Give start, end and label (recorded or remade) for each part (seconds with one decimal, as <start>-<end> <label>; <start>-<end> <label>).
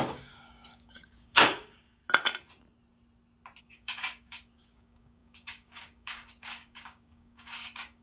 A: 0.0-2.0 remade; 2.0-3.6 recorded; 3.6-8.0 remade